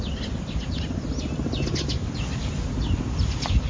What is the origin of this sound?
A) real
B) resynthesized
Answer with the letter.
A